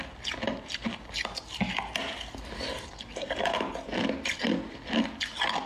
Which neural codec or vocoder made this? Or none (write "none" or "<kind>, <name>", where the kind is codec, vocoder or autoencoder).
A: none